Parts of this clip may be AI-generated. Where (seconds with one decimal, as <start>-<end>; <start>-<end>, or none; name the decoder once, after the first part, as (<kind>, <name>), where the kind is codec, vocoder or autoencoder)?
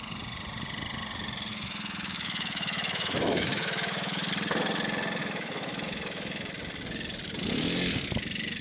1.5-4.3 (autoencoder, DAC-VAE); 5.2-6.5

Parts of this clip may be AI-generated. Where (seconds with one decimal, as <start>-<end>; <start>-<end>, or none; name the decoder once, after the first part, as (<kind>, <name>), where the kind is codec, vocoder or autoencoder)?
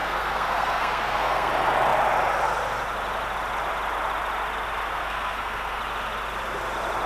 0.0-1.5 (codec, SNAC); 4.9-5.8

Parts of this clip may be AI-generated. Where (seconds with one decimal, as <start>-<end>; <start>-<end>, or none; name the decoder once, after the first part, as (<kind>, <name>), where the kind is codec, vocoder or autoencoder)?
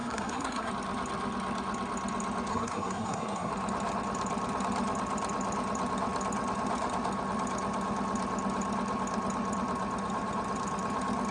0.0-0.7 (codec, SNAC); 2.5-3.5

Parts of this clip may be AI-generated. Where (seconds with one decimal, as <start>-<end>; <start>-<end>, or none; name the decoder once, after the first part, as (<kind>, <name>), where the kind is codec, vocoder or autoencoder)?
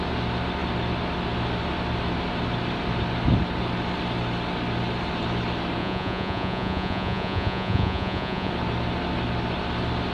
5.8-8.5 (vocoder, Vocos)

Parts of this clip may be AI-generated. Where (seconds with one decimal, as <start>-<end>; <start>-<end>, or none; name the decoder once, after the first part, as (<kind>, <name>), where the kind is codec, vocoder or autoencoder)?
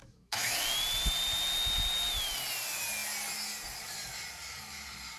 0.0-0.6 (autoencoder, DAC-VAE)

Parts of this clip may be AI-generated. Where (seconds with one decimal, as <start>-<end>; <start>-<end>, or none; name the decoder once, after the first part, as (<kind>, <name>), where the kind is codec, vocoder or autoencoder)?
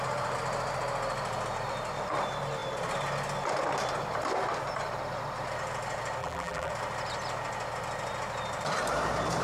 6.2-6.7 (vocoder, BigVGAN v2)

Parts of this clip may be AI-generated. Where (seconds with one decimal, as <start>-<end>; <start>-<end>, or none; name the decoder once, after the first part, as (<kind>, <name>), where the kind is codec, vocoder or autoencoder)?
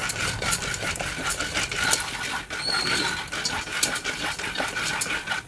0.0-3.3 (vocoder, BigVGAN v2); 3.7-4.9